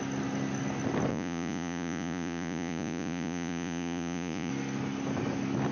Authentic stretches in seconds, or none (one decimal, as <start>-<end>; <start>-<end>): 0.0-1.1; 4.5-5.7

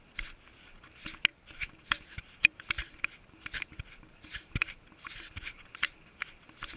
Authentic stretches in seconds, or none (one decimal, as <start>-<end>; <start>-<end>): 0.0-1.3; 5.4-6.8

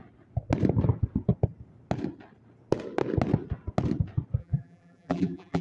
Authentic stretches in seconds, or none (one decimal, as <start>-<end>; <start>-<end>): 0.0-4.4

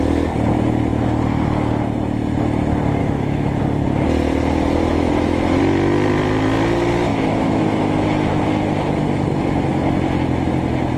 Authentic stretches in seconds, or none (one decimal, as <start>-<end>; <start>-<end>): 0.0-3.0; 3.6-4.9; 5.6-7.1; 8.4-11.0

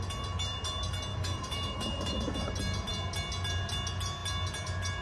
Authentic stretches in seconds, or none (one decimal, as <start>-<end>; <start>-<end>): 0.0-1.1; 2.5-5.0